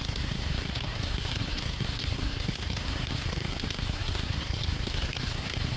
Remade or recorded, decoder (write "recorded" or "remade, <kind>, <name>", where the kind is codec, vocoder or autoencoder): remade, codec, SNAC